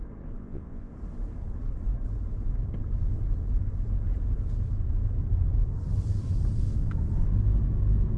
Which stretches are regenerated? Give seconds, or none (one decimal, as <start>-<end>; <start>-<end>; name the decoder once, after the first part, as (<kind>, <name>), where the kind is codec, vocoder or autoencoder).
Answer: 0.4-0.9 (vocoder, Vocos)